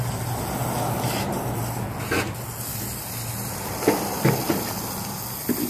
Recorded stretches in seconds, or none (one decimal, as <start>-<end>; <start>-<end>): 0.0-2.7; 4.0-5.7